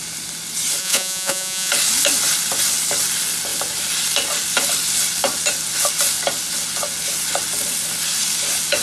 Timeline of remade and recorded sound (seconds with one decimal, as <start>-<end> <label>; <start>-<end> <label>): 0.0-0.8 recorded; 0.8-1.7 remade; 1.7-8.8 recorded